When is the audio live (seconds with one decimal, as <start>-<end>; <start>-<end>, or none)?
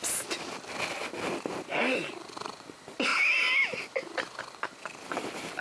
0.0-5.6